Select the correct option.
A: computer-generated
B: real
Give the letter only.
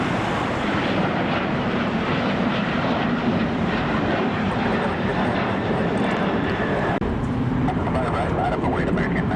A